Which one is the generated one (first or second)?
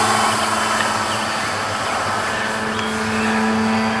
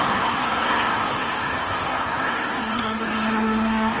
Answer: second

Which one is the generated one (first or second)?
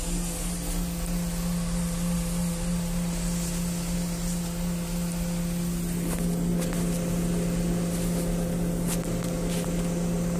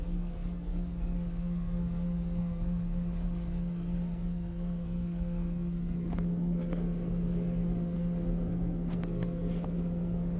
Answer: second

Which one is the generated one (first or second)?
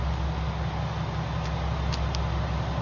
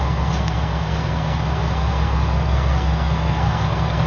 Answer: second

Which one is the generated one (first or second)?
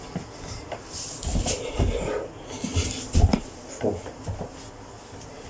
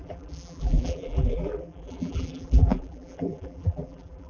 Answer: second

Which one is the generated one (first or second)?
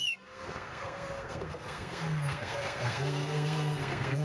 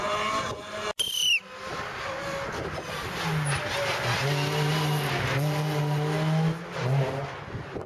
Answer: first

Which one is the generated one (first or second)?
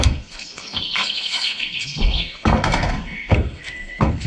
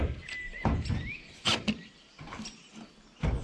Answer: first